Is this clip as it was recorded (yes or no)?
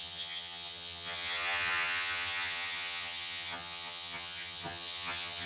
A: no